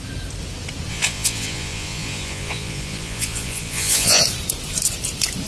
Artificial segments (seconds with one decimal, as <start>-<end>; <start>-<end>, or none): 0.9-4.2